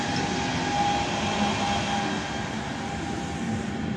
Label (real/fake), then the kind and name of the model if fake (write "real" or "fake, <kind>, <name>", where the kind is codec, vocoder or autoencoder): real